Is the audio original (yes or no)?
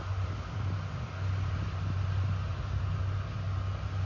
yes